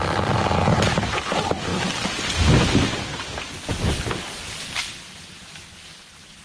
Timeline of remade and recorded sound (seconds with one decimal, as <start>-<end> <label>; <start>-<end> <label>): 0.0-6.4 recorded